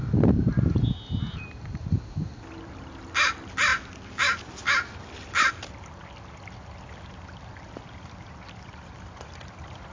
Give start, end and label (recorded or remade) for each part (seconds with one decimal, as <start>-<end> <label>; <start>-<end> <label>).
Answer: 0.0-9.9 recorded